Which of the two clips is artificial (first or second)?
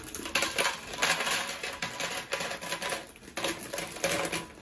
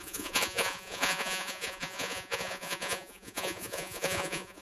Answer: second